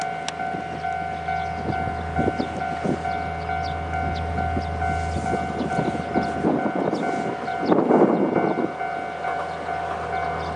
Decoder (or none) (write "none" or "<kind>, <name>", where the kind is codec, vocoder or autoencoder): none